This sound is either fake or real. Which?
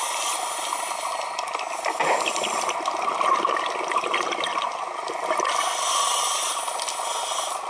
real